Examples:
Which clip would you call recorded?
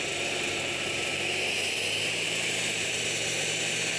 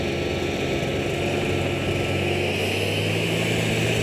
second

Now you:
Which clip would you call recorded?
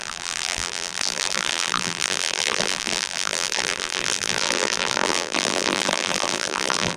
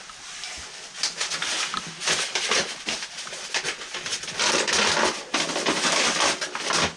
second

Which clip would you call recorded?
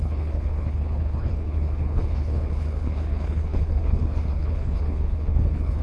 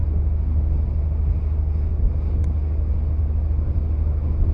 second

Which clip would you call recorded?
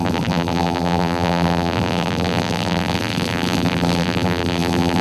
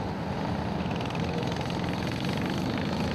second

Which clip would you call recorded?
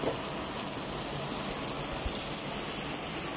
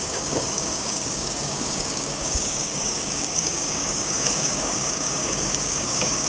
first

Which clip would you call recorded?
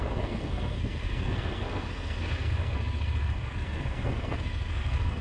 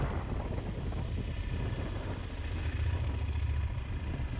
second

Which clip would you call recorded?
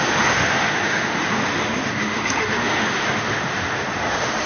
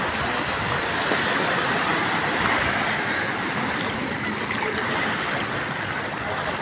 second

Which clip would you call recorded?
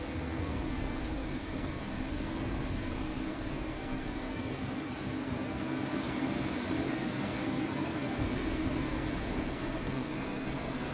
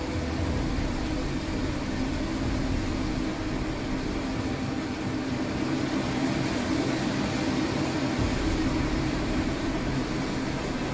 second